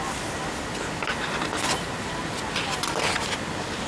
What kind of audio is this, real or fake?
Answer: real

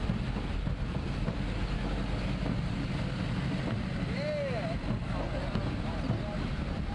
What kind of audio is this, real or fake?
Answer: real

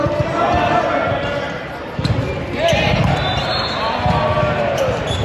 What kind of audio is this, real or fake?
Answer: real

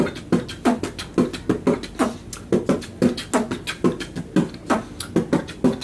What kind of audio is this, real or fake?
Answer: real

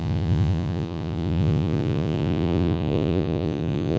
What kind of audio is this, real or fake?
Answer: fake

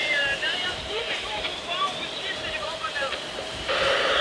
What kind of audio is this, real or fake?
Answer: fake